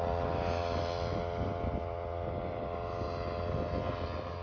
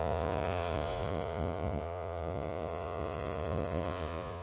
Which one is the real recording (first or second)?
first